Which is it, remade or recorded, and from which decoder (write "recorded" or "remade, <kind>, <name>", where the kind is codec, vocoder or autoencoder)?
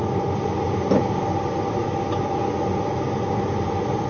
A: recorded